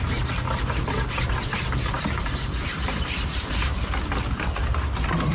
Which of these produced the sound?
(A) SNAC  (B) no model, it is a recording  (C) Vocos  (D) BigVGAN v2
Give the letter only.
B